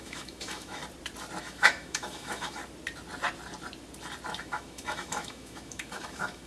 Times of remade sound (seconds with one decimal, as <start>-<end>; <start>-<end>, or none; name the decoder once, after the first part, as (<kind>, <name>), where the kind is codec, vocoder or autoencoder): 0.0-0.8 (autoencoder, DAC-VAE); 1.4-2.6; 4.4-6.5